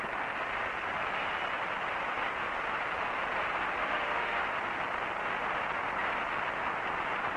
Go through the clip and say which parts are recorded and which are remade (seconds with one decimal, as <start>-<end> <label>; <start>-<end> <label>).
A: 0.0-3.8 recorded; 3.8-4.4 remade; 4.4-7.4 recorded